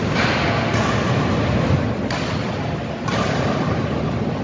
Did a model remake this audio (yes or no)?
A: no